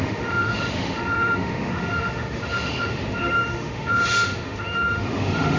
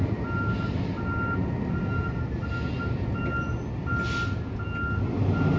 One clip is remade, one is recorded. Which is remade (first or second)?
first